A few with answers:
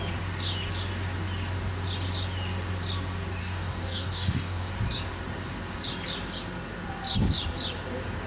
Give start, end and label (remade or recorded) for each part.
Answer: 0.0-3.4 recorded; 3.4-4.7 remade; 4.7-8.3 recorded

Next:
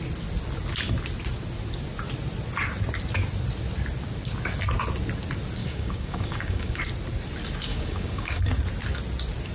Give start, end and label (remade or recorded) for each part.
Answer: 0.0-5.6 recorded; 5.6-6.8 remade; 6.8-7.7 recorded; 7.7-8.4 remade; 8.4-9.5 recorded